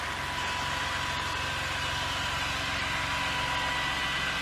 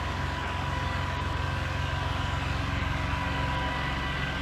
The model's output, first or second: second